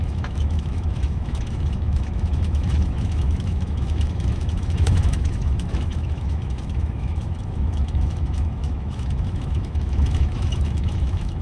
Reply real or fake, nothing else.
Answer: fake